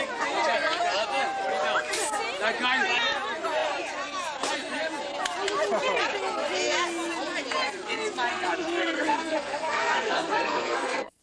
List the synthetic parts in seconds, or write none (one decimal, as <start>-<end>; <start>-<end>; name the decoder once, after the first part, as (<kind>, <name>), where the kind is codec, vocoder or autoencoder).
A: 8.3-11.2 (codec, SNAC)